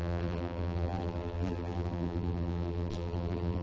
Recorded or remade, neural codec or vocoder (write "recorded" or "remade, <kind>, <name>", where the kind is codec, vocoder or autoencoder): remade, vocoder, BigVGAN v2